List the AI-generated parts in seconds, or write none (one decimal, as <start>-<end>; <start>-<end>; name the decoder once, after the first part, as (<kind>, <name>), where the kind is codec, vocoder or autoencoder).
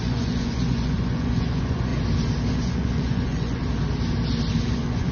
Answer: 0.0-1.9 (vocoder, Vocos); 2.5-3.6; 4.6-5.1